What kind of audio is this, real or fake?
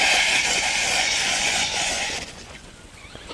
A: fake